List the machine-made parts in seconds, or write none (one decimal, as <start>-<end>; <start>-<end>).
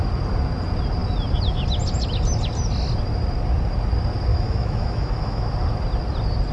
4.3-5.4